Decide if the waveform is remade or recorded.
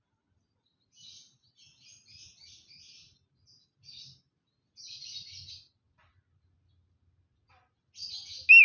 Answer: recorded